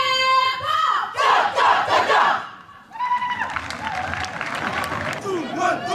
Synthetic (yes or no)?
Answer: no